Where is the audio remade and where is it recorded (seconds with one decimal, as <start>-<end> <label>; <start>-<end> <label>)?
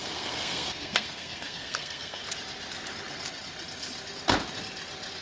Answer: 0.0-2.2 remade; 2.2-5.2 recorded